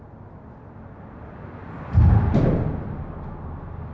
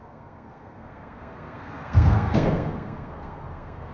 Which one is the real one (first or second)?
first